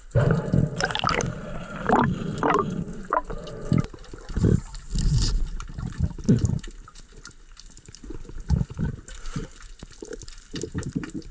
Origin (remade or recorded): recorded